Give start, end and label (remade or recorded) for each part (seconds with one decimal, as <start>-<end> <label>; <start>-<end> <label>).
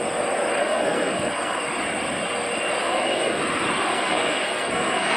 0.0-0.6 recorded; 0.6-1.6 remade; 1.6-2.8 recorded; 2.8-3.4 remade; 3.4-3.9 recorded; 3.9-5.2 remade